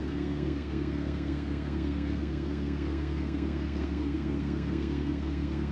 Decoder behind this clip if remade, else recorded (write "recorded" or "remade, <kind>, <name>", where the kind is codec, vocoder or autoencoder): remade, codec, SNAC